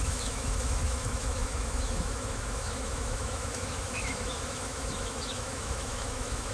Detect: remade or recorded remade